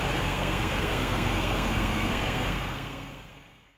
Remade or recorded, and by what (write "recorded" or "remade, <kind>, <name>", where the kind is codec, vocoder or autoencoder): remade, codec, SNAC